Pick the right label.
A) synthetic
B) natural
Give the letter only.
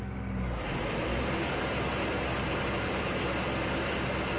A